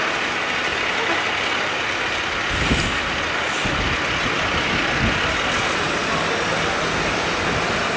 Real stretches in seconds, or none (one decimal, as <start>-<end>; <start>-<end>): 0.0-8.0